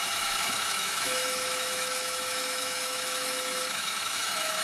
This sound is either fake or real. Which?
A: fake